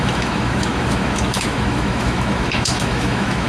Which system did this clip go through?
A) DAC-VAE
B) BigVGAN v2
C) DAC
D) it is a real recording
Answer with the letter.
A